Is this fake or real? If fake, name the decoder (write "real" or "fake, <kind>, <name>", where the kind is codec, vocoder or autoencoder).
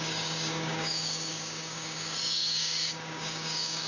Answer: fake, codec, DAC